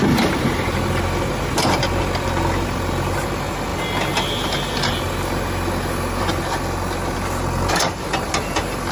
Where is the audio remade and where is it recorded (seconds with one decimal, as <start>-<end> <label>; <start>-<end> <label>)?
0.0-8.9 recorded